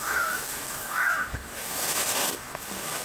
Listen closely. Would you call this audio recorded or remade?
remade